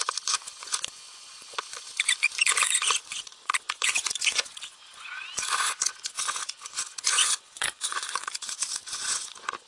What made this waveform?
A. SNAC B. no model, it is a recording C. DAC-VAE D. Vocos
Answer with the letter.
D